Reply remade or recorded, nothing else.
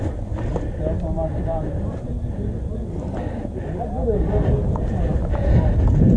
recorded